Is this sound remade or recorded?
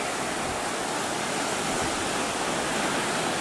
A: recorded